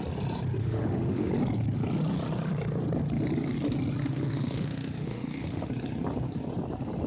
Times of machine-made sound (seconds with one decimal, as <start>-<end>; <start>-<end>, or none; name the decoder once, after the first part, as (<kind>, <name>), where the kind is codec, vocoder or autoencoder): 0.6-1.3 (autoencoder, DAC-VAE); 4.0-5.7